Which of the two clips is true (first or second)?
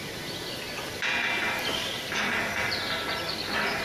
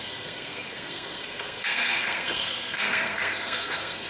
first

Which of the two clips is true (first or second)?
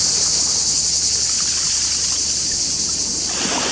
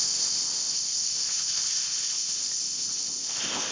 first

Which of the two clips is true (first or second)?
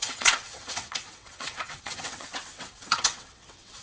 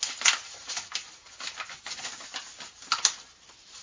second